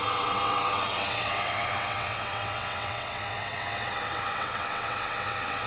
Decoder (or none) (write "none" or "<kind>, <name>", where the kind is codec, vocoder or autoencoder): vocoder, WaveNeXt